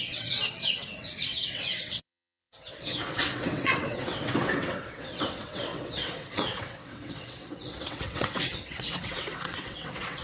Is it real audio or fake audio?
fake